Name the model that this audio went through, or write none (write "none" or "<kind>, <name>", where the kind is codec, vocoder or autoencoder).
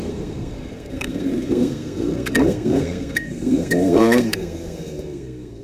codec, SNAC